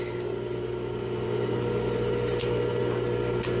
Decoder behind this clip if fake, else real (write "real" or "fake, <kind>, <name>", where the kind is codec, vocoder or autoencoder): real